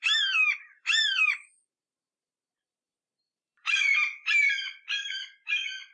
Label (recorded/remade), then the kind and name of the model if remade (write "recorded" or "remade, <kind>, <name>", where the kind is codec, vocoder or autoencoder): remade, vocoder, BigVGAN v2